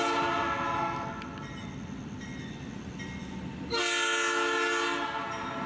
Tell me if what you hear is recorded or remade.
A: recorded